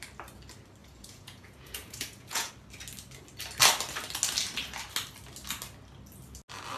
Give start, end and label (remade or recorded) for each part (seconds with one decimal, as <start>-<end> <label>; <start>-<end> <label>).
0.0-0.8 recorded; 0.8-2.5 remade; 2.5-6.8 recorded